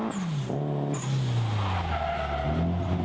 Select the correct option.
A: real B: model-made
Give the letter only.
A